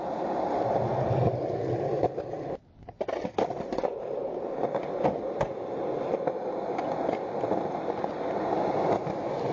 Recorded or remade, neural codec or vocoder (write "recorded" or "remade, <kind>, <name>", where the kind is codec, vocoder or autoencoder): recorded